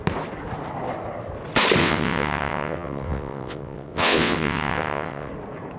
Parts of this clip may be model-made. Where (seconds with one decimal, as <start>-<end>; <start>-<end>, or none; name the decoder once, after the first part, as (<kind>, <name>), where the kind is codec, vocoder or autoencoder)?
1.8-5.3 (vocoder, WaveNeXt)